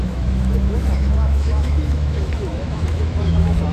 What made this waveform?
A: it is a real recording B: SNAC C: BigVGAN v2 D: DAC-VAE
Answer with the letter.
D